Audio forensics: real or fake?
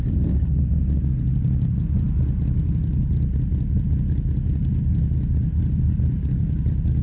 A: real